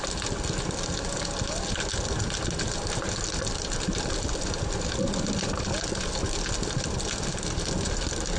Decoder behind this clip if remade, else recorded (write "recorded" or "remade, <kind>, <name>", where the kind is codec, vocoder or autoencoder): recorded